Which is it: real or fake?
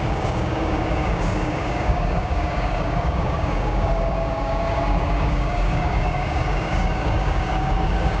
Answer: fake